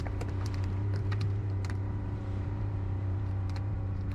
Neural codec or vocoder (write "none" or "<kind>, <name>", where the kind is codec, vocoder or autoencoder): vocoder, BigVGAN v2